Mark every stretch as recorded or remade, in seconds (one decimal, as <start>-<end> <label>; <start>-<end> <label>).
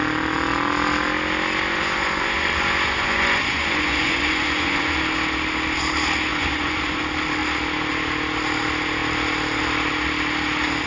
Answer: 0.0-1.7 recorded; 1.7-5.0 remade; 5.0-6.3 recorded; 6.3-7.0 remade; 7.0-10.9 recorded